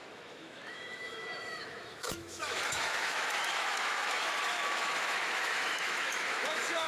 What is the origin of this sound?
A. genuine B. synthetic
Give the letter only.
B